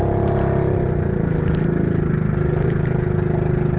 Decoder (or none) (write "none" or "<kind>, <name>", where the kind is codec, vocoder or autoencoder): none